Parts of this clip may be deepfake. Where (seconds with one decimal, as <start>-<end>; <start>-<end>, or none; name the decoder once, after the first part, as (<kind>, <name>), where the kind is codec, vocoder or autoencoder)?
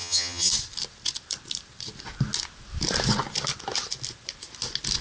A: 0.0-0.5 (vocoder, HiFi-GAN)